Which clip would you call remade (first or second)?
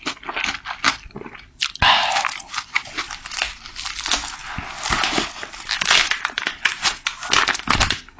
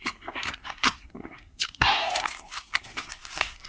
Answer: second